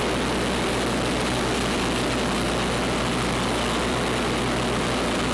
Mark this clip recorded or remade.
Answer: recorded